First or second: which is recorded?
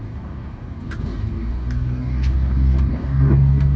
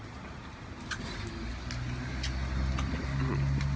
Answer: second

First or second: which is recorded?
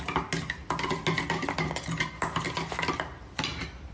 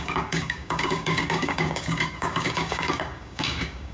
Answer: first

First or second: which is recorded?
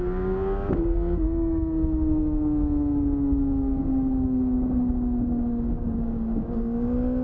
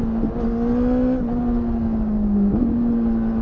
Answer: second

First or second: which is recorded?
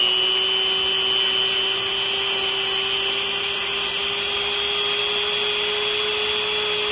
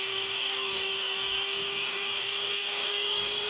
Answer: first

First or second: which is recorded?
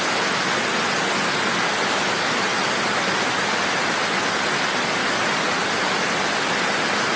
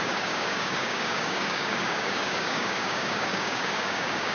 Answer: first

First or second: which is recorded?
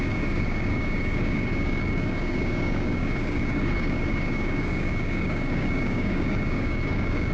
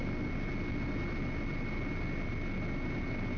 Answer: second